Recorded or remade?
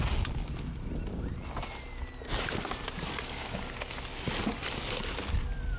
recorded